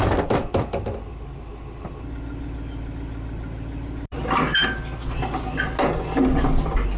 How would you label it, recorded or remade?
recorded